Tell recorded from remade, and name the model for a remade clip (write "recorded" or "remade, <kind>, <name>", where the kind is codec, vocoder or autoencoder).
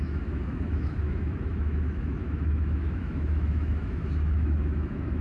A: remade, autoencoder, DAC-VAE